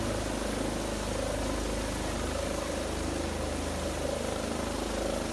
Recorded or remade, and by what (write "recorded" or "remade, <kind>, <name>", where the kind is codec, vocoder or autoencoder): recorded